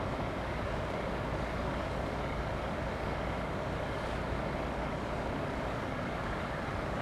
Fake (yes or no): yes